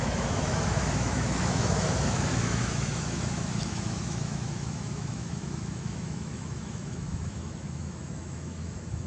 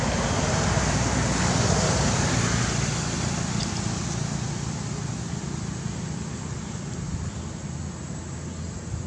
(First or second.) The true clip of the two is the second